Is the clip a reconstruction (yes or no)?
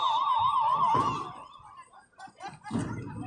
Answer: no